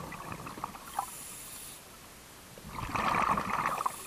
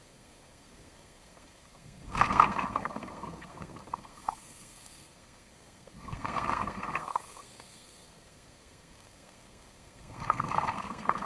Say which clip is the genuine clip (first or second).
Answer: first